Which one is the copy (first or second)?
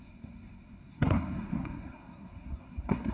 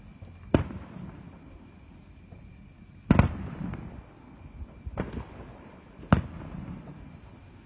first